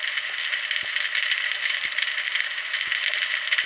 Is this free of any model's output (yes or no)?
yes